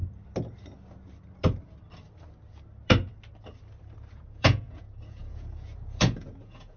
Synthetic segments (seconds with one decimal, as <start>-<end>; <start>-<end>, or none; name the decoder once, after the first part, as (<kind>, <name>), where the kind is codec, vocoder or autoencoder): 4.1-6.8 (vocoder, Vocos)